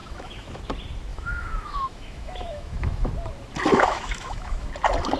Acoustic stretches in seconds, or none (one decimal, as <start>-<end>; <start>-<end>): 0.6-1.1; 3.1-3.7; 4.7-5.2